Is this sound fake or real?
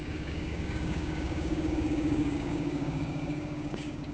fake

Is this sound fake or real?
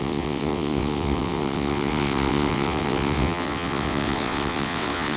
fake